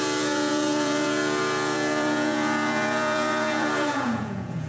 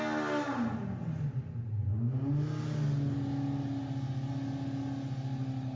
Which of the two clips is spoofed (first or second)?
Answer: first